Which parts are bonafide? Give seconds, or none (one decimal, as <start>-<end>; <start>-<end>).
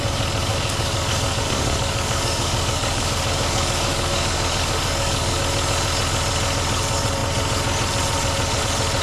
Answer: 0.0-0.5; 5.4-9.0